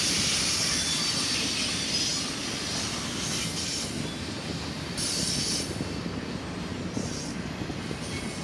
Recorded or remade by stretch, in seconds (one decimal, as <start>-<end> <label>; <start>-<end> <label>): 0.0-8.4 recorded